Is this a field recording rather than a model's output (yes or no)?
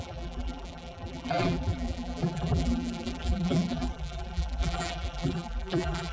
no